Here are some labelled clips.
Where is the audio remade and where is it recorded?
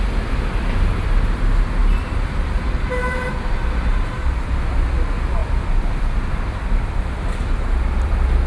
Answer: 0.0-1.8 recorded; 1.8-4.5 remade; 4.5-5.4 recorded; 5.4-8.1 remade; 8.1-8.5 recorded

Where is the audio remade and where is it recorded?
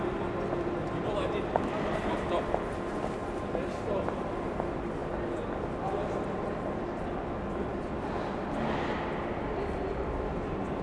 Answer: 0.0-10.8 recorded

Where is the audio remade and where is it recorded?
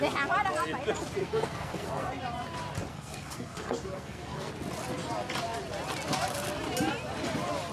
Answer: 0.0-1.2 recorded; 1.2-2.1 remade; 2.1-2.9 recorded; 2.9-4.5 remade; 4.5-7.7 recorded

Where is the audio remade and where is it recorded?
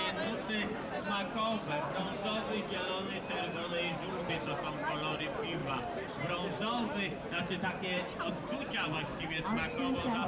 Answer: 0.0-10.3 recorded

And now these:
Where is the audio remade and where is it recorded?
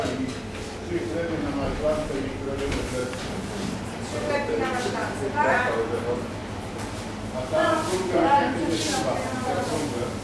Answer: 0.0-3.0 recorded; 3.0-3.8 remade; 3.8-10.2 recorded